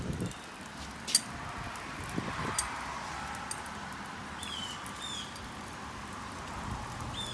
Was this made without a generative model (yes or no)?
yes